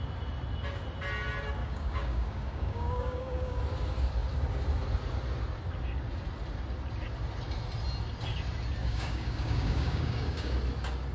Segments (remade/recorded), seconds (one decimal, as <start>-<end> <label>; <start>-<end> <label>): 0.0-1.6 recorded; 1.6-3.6 remade; 3.6-8.8 recorded; 8.8-10.6 remade; 10.6-11.1 recorded

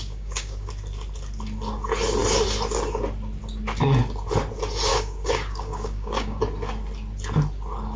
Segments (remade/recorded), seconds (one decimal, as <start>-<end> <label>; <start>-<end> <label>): 0.0-0.7 remade; 0.7-4.9 recorded; 4.9-6.4 remade; 6.4-8.0 recorded

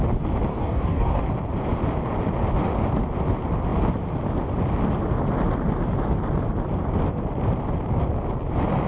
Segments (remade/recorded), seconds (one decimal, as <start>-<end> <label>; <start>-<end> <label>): 0.0-0.5 recorded; 0.5-1.2 remade; 1.2-8.9 recorded

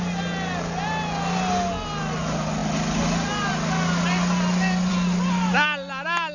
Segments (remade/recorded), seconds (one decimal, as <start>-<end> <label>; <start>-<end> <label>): 0.0-6.3 recorded

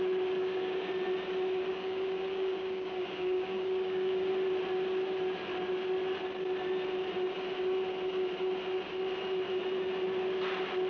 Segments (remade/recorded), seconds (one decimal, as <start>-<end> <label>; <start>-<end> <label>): 0.0-0.4 recorded; 0.4-0.9 remade; 0.9-1.7 recorded; 1.7-4.3 remade; 4.3-10.9 recorded

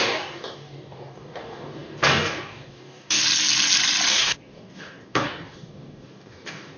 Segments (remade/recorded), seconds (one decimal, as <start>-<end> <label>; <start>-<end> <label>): 0.0-3.2 remade; 3.2-4.1 recorded; 4.1-6.8 remade

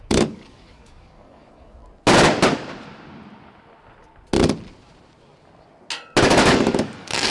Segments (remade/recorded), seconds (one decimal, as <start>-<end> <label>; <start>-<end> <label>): 0.0-1.8 remade; 1.8-6.2 recorded; 6.2-7.3 remade